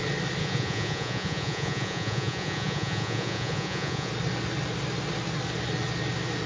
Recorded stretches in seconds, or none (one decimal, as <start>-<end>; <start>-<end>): 0.0-0.4; 4.1-6.5